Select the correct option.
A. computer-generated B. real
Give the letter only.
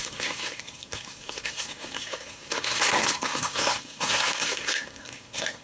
A